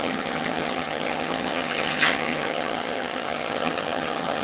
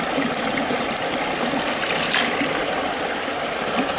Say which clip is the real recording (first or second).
second